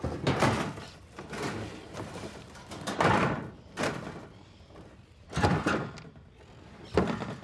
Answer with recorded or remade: remade